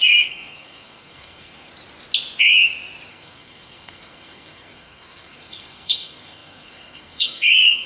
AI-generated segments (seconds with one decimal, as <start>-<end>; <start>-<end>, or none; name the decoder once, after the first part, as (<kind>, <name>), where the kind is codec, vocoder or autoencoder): 0.0-1.7 (codec, SNAC); 3.1-7.9